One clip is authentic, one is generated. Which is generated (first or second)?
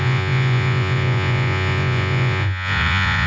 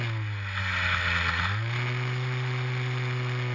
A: first